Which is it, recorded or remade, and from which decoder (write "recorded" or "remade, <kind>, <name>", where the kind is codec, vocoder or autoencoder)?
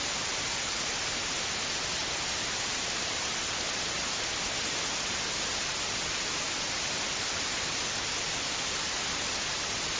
recorded